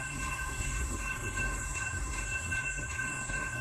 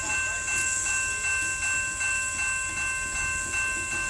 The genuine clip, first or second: second